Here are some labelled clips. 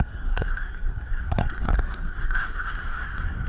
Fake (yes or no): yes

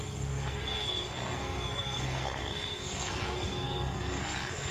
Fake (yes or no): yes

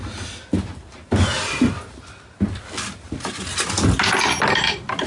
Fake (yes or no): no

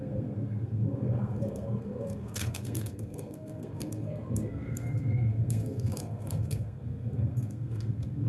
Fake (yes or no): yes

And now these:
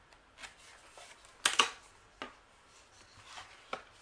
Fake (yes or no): no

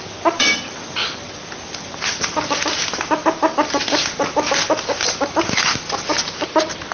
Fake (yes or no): no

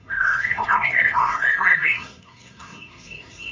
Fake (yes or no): yes